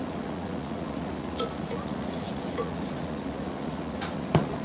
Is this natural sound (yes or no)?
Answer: no